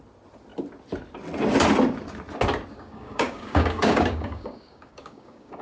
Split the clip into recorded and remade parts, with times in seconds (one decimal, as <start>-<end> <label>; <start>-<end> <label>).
0.0-2.7 recorded; 2.7-5.6 remade